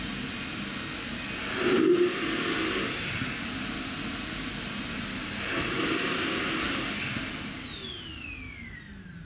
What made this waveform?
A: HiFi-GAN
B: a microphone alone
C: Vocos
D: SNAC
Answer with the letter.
B